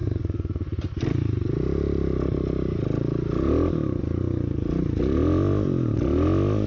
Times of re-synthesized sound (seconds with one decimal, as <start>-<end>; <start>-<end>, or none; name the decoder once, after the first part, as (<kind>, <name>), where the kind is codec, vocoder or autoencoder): none